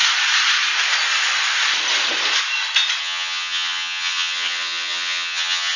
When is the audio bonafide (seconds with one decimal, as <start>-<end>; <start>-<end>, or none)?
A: 0.0-3.0